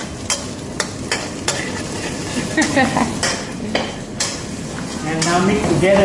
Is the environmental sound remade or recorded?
recorded